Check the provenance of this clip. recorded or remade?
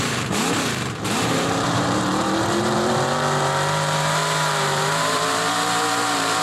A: remade